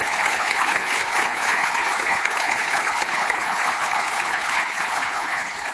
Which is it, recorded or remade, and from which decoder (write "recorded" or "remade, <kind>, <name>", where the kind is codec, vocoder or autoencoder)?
remade, codec, HILCodec